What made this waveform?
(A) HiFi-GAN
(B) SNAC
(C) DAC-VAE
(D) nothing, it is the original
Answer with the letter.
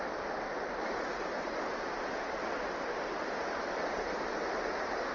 D